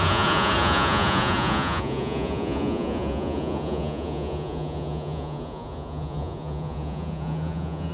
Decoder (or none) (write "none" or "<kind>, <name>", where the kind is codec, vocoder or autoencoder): vocoder, Vocos